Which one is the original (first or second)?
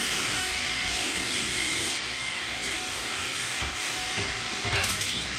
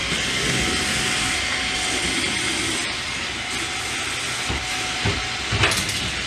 second